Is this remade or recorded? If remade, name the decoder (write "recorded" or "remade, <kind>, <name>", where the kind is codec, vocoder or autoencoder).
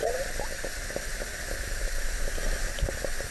recorded